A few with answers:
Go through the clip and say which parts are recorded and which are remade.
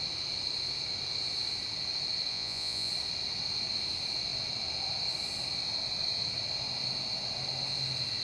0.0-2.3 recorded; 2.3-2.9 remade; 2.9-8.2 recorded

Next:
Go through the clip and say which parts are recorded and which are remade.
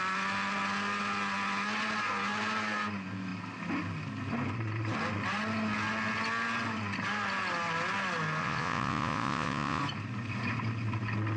0.0-8.4 recorded; 8.4-9.8 remade; 9.8-11.4 recorded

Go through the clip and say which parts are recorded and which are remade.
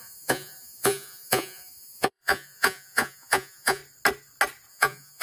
0.0-3.8 remade; 3.8-4.7 recorded; 4.7-5.2 remade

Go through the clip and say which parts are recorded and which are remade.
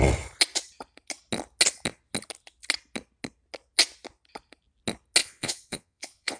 0.0-5.2 recorded; 5.2-6.4 remade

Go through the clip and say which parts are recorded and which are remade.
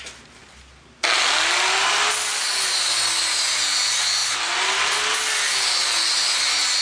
0.0-6.8 recorded